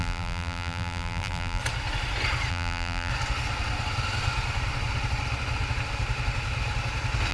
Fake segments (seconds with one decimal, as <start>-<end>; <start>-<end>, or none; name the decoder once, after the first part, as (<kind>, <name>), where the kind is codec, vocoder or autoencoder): 0.0-1.6 (vocoder, BigVGAN v2); 2.5-3.1